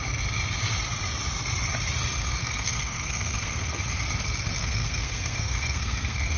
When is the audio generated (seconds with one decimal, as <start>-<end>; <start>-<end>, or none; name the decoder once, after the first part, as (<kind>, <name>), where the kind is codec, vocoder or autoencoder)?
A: 2.4-3.7 (codec, SNAC); 4.6-6.4